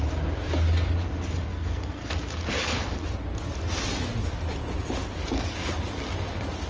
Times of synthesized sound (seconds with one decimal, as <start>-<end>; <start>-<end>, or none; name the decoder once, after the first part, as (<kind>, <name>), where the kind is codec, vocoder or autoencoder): 1.5-2.1 (codec, SNAC)